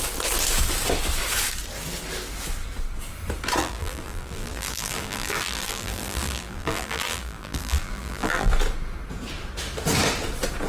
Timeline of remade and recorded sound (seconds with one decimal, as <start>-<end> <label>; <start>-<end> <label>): 0.0-3.6 recorded; 3.6-8.5 remade; 8.5-10.7 recorded